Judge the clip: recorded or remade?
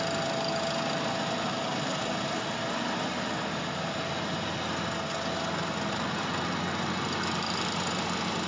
recorded